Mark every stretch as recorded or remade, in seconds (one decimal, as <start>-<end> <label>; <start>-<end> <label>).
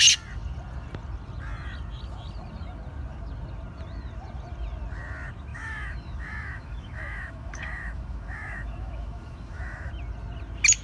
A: 0.0-5.5 recorded; 5.5-9.9 remade; 9.9-10.8 recorded